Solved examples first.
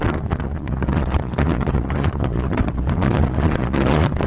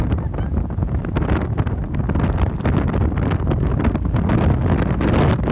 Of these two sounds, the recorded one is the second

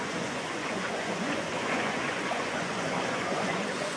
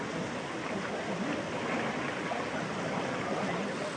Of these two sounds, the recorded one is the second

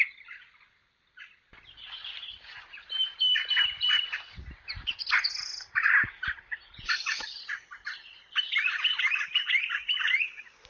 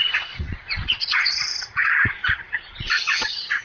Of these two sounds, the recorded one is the first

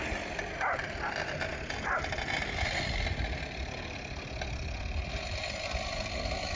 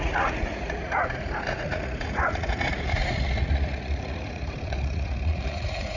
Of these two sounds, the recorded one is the first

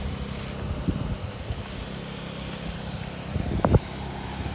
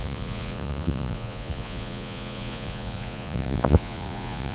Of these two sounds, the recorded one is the first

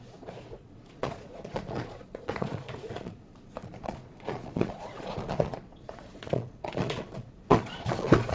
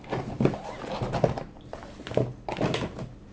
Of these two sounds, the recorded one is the second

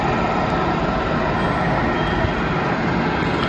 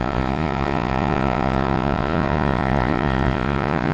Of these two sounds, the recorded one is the first